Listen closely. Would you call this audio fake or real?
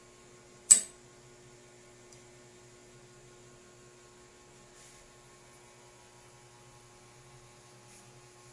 real